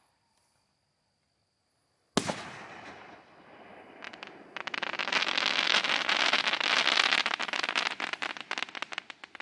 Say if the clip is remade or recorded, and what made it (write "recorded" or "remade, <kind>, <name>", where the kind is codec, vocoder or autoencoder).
recorded